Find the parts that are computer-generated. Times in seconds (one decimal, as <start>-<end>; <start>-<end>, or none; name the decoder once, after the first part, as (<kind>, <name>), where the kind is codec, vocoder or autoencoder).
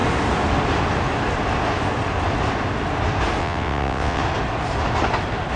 3.4-4.2 (vocoder, WaveNeXt)